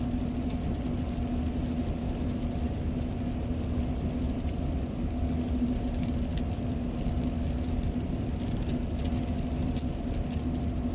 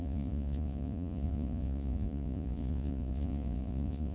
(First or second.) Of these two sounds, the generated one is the second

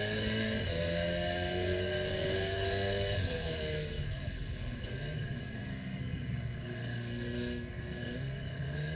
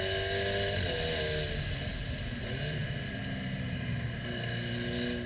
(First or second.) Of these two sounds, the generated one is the first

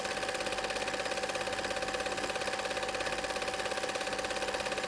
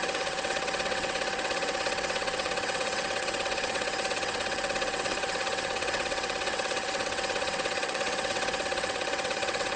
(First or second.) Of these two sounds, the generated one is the second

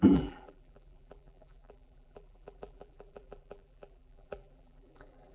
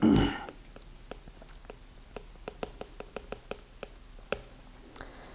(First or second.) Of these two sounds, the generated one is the first